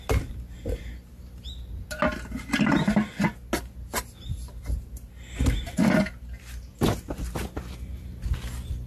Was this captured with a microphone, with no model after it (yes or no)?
yes